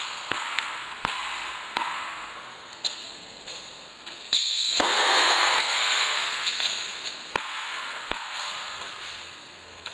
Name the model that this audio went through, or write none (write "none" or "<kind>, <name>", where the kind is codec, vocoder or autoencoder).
codec, SNAC